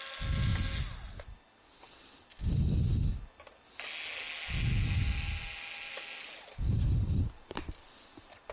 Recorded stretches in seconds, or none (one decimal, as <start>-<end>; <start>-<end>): 0.0-8.5